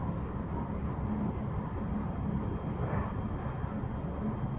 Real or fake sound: real